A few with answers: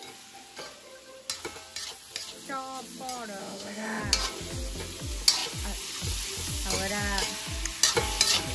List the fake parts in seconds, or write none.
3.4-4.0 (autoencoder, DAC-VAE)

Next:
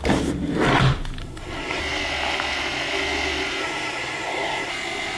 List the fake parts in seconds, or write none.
1.2-1.8 (codec, SNAC); 3.6-4.7

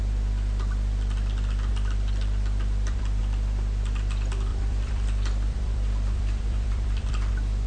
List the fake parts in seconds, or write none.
1.7-3.2 (vocoder, BigVGAN v2); 4.5-7.3

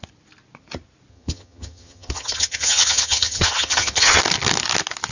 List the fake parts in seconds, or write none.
1.1-4.2 (vocoder, HiFi-GAN)